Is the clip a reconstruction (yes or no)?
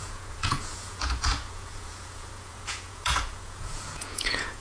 yes